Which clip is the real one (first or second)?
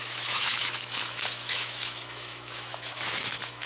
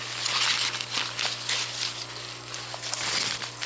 second